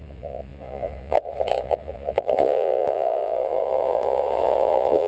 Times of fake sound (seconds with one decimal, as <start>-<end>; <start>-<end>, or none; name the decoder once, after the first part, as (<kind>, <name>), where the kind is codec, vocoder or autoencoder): 0.0-5.1 (vocoder, Vocos)